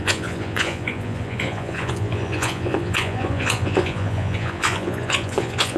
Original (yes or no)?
no